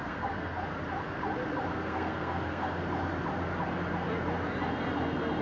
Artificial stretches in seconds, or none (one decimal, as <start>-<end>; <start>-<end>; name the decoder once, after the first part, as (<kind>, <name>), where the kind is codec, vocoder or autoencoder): 0.0-0.6 (codec, SNAC); 1.7-2.8